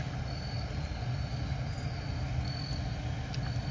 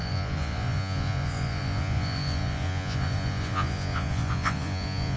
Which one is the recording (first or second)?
first